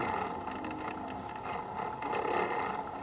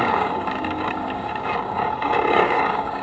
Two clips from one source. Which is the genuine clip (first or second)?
first